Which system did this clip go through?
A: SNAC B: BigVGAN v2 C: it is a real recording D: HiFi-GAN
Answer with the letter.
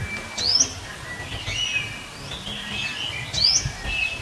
C